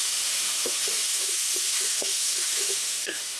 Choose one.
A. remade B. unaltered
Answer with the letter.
A